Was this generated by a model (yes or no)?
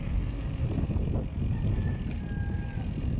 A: no